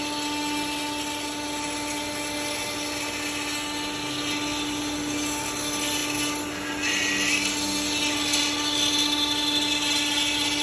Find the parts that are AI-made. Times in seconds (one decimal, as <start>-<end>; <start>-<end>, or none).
none